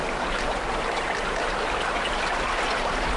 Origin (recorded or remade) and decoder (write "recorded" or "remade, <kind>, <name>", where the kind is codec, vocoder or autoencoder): recorded